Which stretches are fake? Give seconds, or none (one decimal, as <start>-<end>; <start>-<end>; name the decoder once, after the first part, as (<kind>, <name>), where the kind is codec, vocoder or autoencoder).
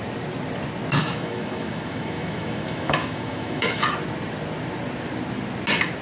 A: 1.0-3.8 (autoencoder, DAC-VAE)